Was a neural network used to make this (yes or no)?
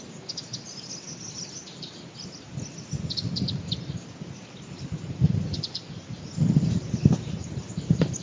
no